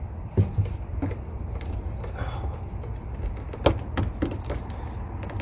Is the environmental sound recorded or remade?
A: recorded